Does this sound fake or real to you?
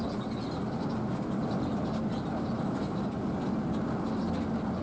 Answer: real